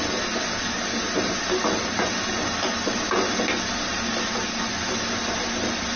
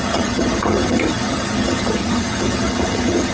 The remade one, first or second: second